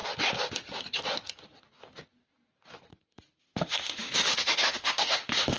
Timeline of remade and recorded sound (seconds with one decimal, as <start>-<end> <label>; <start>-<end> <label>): 0.0-3.4 recorded; 3.4-5.6 remade